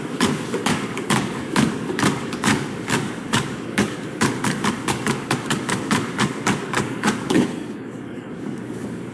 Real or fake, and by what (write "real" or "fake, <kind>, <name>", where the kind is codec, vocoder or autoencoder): fake, codec, DAC